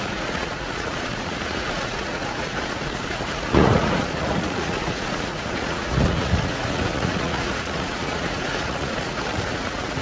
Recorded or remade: remade